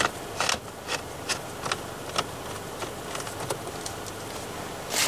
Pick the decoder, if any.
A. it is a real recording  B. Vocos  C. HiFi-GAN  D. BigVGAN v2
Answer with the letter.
A